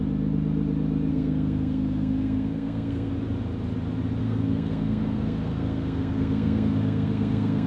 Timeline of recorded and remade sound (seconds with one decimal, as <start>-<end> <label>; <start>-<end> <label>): 0.0-1.1 recorded; 1.1-3.1 remade; 3.1-4.2 recorded; 4.2-7.7 remade